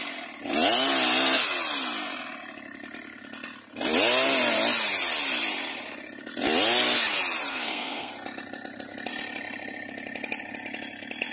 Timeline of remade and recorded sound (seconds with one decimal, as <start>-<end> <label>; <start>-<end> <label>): 0.0-7.5 recorded; 7.5-8.1 remade; 8.1-11.3 recorded